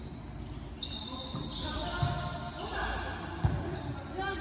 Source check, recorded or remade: recorded